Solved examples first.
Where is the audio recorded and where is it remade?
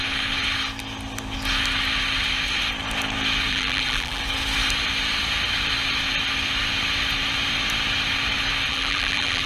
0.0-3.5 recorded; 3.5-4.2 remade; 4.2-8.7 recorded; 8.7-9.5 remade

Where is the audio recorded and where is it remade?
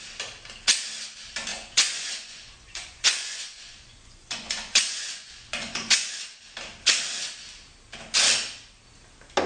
0.0-1.5 recorded; 1.5-6.1 remade; 6.1-9.5 recorded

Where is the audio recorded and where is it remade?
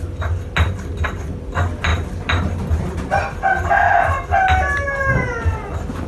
0.0-6.1 recorded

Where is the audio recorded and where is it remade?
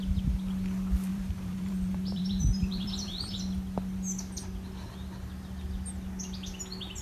0.0-1.1 recorded; 1.1-3.4 remade; 3.4-7.0 recorded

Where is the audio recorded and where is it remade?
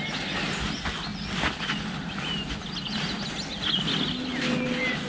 0.0-5.1 recorded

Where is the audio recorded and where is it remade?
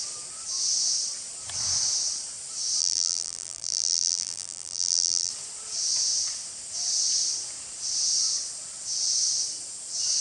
0.0-2.8 recorded; 2.8-5.3 remade; 5.3-10.2 recorded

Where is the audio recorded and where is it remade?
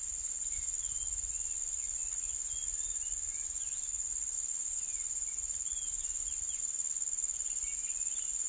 0.0-8.5 recorded